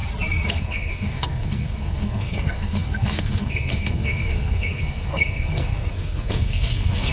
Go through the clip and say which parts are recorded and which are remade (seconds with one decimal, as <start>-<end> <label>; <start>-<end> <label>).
0.0-0.5 recorded; 0.5-7.1 remade